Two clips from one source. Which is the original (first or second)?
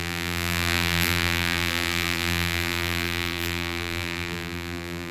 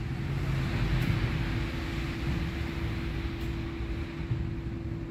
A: second